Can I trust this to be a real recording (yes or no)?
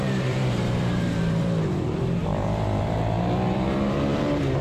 no